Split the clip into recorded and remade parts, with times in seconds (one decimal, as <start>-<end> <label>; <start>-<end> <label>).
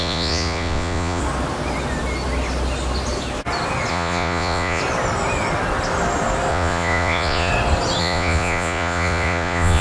0.0-1.2 remade; 1.2-3.9 recorded; 3.9-4.8 remade; 4.8-6.5 recorded; 6.5-7.5 remade; 7.5-8.0 recorded; 8.0-9.8 remade